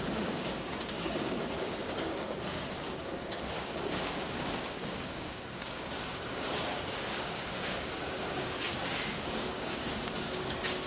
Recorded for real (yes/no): no